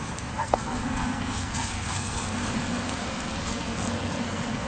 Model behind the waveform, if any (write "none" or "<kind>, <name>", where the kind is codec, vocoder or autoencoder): codec, SNAC